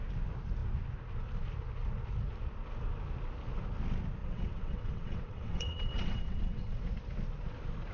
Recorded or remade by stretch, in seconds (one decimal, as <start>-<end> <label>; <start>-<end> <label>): 0.0-4.2 recorded; 4.2-6.8 remade; 6.8-7.9 recorded